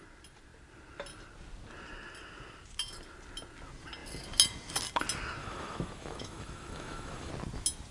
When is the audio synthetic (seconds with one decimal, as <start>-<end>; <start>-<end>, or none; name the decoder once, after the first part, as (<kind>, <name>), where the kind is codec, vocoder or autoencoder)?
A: 5.4-7.3 (autoencoder, DAC-VAE)